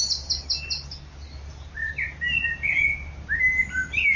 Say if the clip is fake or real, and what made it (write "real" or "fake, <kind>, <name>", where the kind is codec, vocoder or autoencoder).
real